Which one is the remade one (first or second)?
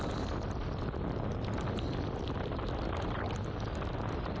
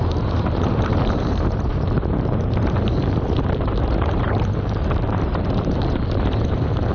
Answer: second